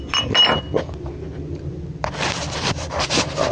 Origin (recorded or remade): recorded